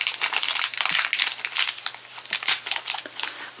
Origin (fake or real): real